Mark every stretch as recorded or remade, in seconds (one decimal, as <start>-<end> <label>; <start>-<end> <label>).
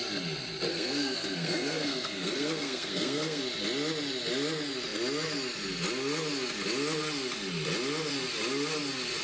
0.0-0.7 recorded; 0.7-3.4 remade; 3.4-9.2 recorded